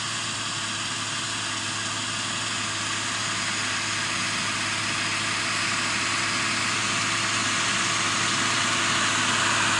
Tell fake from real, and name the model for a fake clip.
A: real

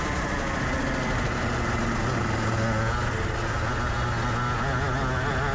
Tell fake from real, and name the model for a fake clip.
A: real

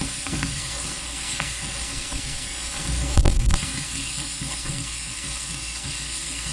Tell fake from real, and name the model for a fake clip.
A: fake, codec, SNAC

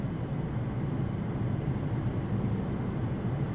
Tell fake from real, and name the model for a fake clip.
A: real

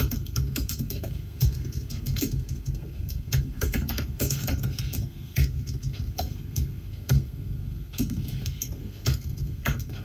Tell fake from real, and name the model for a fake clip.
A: fake, codec, SNAC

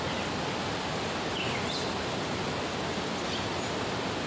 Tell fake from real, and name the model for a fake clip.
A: real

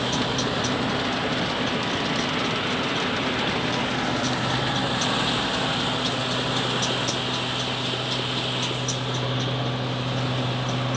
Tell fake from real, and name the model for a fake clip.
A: real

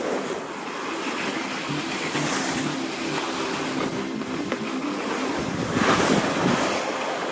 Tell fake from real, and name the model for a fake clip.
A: real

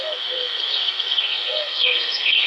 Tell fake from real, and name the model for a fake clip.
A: fake, codec, SNAC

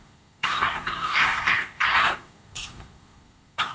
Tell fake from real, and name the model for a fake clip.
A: fake, codec, SNAC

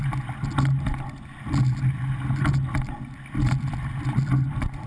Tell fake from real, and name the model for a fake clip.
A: real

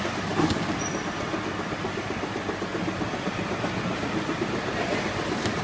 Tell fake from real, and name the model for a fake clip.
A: real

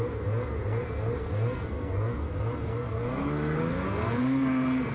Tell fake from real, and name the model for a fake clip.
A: fake, codec, SNAC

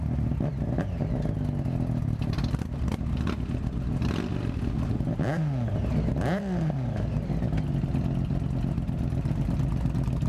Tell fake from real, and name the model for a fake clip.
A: real